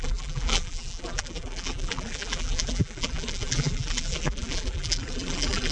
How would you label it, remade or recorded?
remade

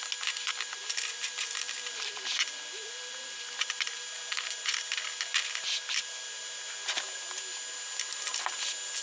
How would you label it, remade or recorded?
recorded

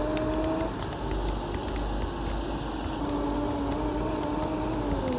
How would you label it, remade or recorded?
recorded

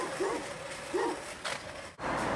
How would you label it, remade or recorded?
recorded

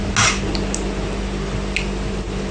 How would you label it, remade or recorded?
recorded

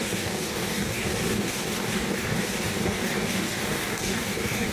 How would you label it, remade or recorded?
remade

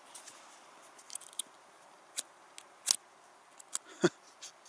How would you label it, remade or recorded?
recorded